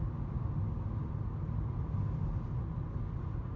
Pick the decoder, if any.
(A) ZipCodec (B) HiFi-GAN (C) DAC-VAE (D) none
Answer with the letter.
D